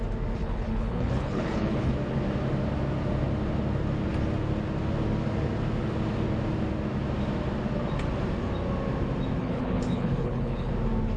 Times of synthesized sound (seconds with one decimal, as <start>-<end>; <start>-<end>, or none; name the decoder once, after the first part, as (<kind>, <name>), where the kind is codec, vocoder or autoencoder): 0.4-1.9 (codec, HILCodec); 9.4-10.7